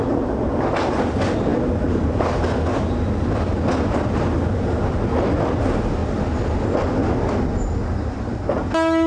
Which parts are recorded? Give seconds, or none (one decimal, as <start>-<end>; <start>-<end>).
0.0-9.1

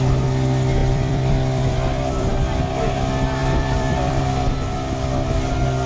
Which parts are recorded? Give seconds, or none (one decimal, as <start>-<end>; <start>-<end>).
0.0-0.8; 2.3-3.4; 4.2-5.9

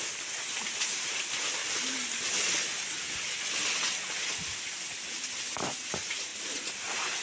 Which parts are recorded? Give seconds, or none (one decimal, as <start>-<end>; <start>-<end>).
0.0-7.2

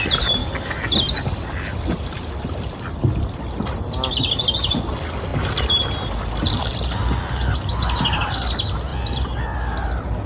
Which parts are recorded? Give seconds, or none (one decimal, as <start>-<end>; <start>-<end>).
0.0-0.4; 2.9-8.9; 9.6-10.3